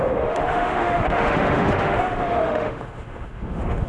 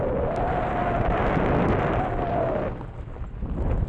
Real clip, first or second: second